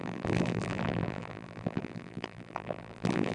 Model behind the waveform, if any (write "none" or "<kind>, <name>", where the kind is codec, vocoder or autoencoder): vocoder, BigVGAN v2